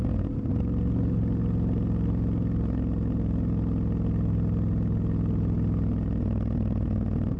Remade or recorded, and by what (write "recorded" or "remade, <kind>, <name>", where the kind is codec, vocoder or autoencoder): recorded